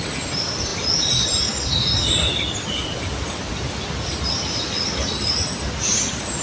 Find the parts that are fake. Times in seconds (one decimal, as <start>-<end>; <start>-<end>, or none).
none